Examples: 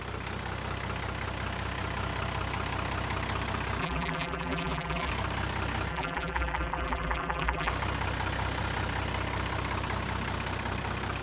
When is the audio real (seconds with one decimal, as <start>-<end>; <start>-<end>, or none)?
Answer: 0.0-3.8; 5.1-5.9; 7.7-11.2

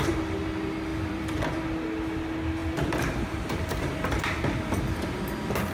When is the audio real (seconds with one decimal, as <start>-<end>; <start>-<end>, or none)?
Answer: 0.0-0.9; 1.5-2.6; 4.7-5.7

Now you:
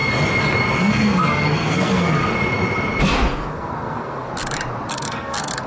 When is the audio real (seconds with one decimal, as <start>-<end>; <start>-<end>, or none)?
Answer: 0.0-0.8; 2.2-3.5; 4.3-4.9